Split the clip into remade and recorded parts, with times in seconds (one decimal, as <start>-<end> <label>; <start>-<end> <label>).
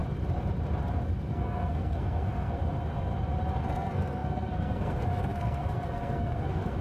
0.0-1.3 recorded; 1.3-2.6 remade; 2.6-3.6 recorded; 3.6-6.8 remade